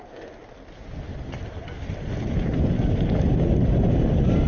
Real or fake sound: real